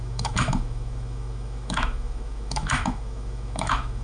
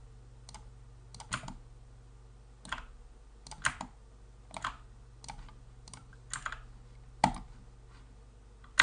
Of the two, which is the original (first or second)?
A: second